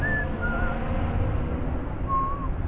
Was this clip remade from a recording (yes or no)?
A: no